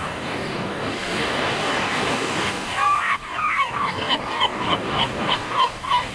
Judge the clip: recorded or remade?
remade